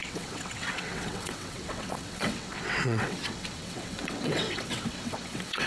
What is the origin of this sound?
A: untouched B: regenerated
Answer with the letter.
B